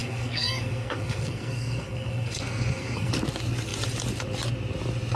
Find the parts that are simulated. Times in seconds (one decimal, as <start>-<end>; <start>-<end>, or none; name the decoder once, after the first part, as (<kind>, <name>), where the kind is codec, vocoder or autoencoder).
0.0-3.1 (codec, SNAC)